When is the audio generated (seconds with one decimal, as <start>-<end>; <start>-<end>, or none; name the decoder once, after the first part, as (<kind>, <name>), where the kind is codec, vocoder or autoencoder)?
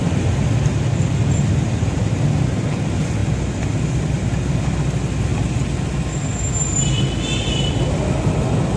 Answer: none